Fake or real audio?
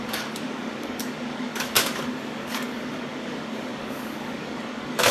fake